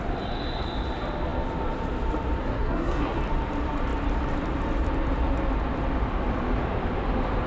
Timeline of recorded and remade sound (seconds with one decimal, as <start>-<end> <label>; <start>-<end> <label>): 0.0-2.4 recorded; 2.4-3.2 remade; 3.2-7.5 recorded